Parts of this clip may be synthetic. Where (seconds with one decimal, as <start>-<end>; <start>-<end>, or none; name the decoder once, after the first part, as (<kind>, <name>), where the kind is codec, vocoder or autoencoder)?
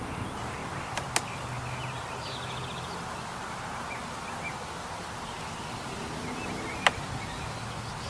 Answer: none